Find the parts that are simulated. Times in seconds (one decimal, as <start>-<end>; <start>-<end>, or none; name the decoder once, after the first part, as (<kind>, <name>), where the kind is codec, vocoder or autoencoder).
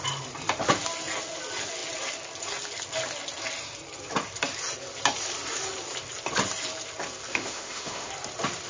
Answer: 7.3-8.1 (autoencoder, DAC-VAE)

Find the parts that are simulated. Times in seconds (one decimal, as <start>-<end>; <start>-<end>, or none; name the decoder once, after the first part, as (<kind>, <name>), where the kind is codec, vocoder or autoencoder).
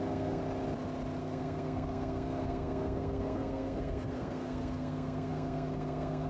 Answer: 0.0-0.4 (codec, SNAC); 1.2-6.3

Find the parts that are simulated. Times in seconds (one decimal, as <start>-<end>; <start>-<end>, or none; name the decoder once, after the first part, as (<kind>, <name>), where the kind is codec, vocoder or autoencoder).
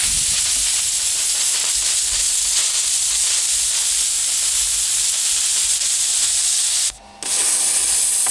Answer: none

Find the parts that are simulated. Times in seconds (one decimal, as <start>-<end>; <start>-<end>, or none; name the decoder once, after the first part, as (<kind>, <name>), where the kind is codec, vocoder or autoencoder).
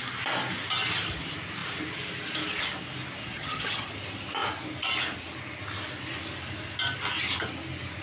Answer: 3.2-3.9 (vocoder, HiFi-GAN)